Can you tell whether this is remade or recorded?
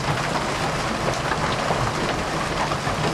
recorded